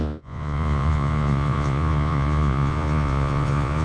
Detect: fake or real fake